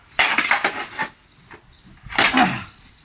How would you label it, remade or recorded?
recorded